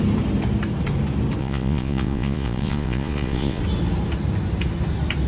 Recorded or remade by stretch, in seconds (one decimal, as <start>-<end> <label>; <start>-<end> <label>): 0.0-1.4 recorded; 1.4-3.6 remade; 3.6-5.3 recorded